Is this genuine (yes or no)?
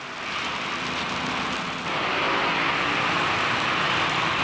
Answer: yes